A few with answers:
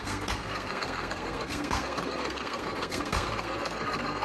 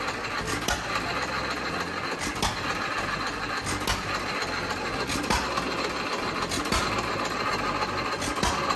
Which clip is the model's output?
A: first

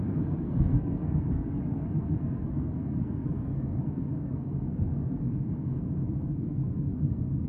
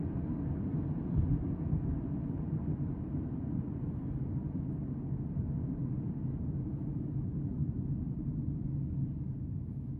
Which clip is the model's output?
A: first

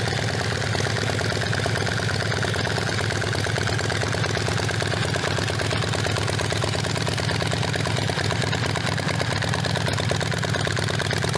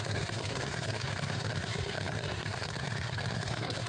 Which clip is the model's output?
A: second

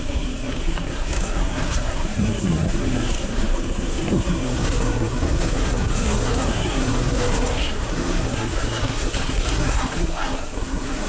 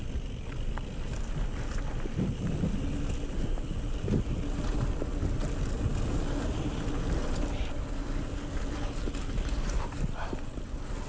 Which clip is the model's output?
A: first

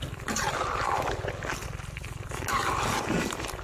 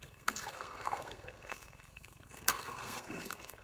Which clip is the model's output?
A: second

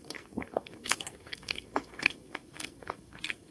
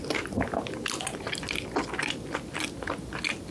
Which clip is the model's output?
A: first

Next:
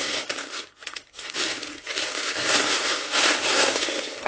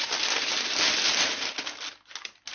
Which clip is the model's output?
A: first